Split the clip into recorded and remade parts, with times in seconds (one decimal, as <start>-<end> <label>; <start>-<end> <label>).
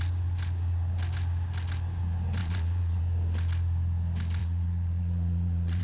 0.0-2.4 recorded; 2.4-3.0 remade; 3.0-4.4 recorded; 4.4-5.8 remade